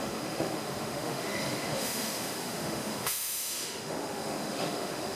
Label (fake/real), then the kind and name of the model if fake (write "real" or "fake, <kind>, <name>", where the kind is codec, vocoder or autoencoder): fake, autoencoder, DAC-VAE